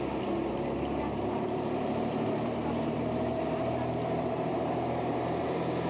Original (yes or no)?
no